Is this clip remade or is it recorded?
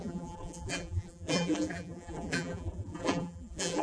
remade